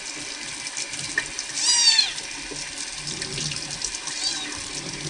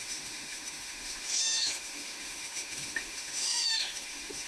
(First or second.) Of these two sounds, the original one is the first